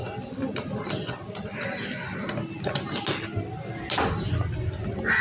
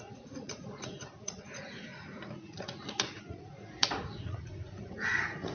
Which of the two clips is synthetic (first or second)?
second